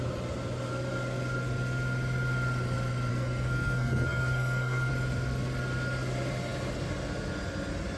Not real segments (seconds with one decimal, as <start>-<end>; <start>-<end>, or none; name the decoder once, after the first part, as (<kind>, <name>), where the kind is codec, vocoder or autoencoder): 3.1-4.9 (codec, SNAC)